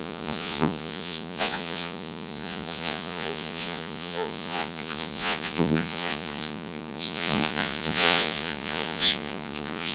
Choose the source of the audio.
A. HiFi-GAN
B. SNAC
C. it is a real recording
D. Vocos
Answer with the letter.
D